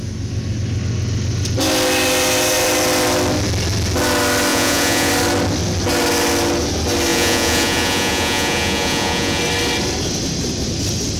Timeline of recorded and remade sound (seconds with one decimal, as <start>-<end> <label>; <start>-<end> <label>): 0.0-4.5 recorded; 4.5-5.1 remade; 5.1-7.1 recorded; 7.1-9.4 remade; 9.4-11.2 recorded